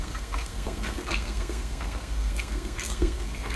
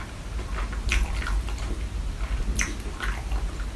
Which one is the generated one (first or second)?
first